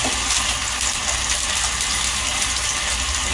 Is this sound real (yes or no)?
yes